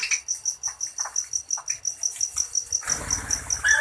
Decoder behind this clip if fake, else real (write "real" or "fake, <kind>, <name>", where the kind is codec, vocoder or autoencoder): real